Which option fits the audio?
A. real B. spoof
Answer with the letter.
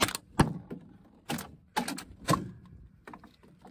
A